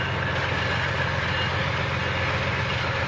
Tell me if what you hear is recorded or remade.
recorded